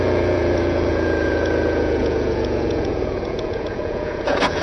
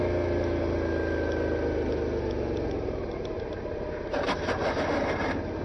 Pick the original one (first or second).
second